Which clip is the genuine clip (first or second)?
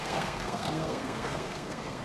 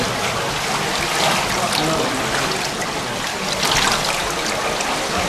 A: second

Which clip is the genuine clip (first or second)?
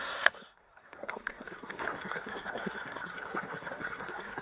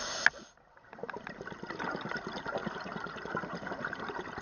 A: second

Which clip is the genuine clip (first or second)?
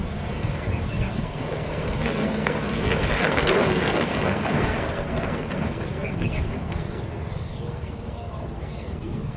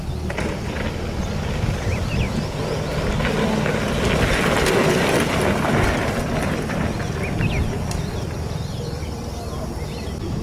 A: second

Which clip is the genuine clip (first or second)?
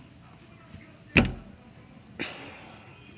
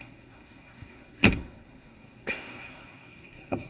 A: first